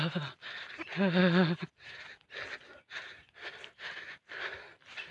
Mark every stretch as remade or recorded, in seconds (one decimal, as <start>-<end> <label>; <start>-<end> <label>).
0.0-5.1 recorded